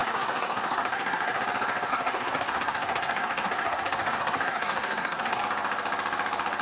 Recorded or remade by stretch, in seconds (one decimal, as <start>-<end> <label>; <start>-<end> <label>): 0.0-1.4 remade; 1.4-1.9 recorded; 1.9-5.4 remade; 5.4-6.6 recorded